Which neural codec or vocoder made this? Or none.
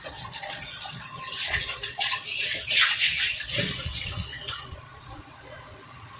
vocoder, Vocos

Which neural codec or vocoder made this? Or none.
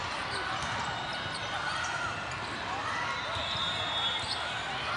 none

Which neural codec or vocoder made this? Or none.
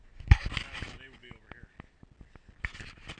none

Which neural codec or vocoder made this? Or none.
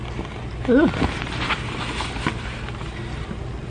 none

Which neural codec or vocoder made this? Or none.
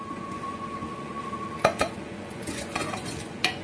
vocoder, Vocos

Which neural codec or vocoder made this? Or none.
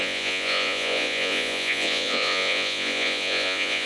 vocoder, Vocos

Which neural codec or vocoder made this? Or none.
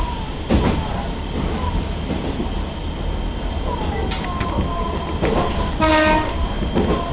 none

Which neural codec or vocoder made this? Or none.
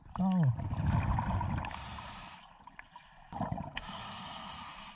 none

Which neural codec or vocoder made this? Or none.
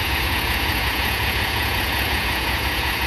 vocoder, Vocos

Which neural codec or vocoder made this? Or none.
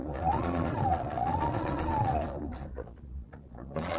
vocoder, Vocos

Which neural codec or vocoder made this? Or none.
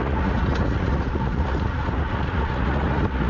vocoder, Vocos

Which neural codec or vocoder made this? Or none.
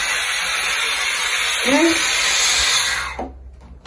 none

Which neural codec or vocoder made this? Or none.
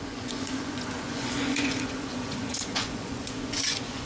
vocoder, Vocos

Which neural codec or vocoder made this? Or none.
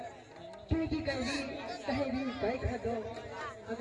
none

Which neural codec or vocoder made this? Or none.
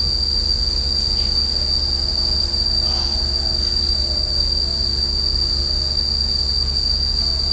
none